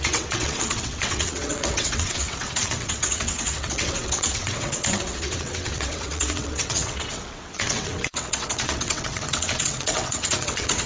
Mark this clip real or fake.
fake